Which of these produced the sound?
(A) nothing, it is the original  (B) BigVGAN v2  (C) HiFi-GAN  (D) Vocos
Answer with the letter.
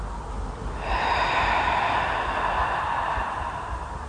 A